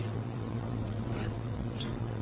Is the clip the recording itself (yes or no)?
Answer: no